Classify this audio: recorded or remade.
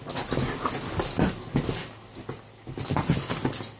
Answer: recorded